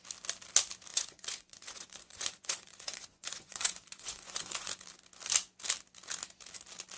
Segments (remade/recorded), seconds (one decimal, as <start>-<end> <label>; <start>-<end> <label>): 0.0-0.9 recorded; 0.9-4.8 remade; 4.8-7.0 recorded